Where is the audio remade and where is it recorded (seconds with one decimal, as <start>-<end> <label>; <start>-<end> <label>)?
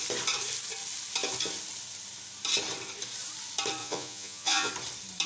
0.0-3.8 recorded; 3.8-4.7 remade; 4.7-5.3 recorded